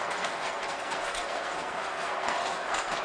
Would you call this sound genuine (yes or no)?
no